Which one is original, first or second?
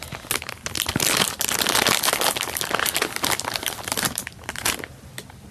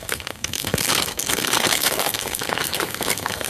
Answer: first